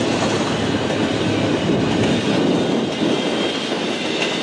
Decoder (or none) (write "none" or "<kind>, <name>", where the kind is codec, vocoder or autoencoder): none